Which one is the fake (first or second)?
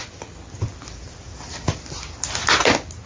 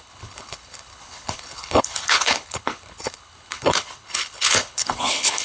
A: second